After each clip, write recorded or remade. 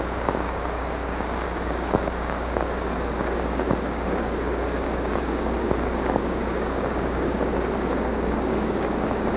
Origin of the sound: remade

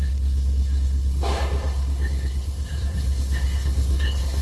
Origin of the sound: remade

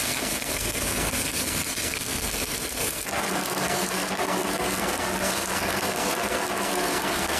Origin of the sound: remade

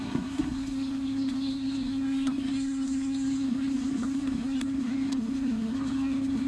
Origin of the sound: remade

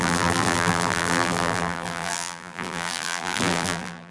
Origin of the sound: remade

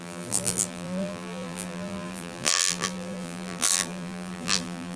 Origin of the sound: remade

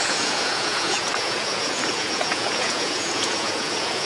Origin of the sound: remade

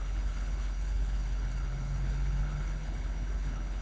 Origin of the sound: remade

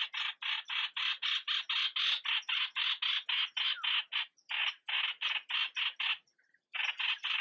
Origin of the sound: recorded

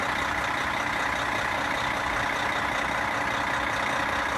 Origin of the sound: recorded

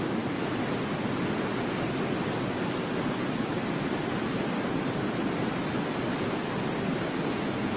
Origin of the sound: recorded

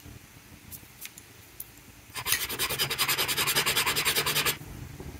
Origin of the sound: recorded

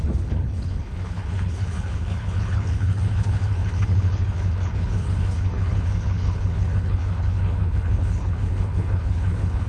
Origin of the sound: remade